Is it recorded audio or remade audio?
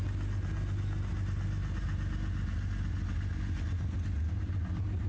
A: recorded